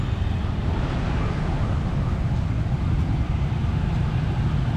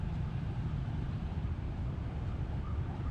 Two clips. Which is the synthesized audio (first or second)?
second